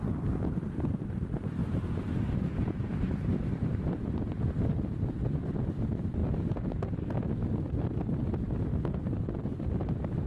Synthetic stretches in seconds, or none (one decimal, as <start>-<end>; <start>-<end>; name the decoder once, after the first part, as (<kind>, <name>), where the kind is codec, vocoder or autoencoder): 1.6-3.9 (vocoder, BigVGAN v2)